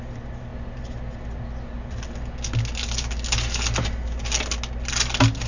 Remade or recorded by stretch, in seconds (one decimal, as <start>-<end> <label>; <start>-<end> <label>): 0.0-5.5 recorded